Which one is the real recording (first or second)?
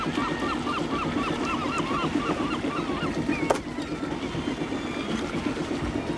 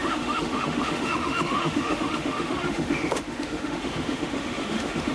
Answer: first